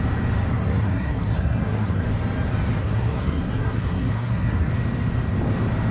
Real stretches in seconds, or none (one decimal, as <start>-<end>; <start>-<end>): 0.0-0.5; 2.0-2.8; 4.7-5.9